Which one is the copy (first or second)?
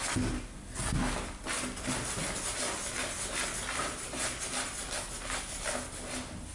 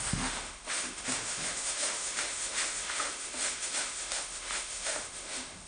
second